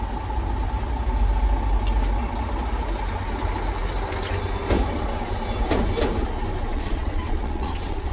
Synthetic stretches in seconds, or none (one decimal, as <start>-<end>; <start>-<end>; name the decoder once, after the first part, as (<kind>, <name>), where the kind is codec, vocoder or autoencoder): 6.7-8.1 (vocoder, Vocos)